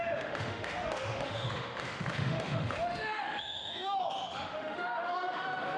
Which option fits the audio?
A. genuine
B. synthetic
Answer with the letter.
B